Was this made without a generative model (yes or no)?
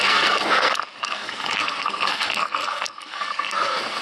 no